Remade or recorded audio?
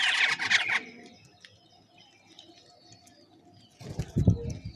recorded